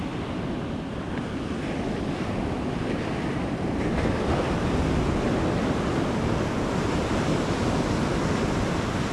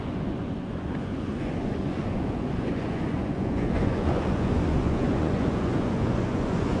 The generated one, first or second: second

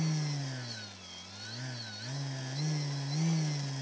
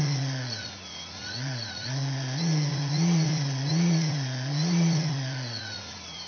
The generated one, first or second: second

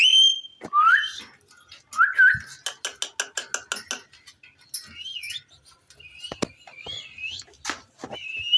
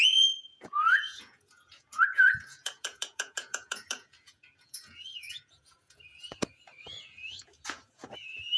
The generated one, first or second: second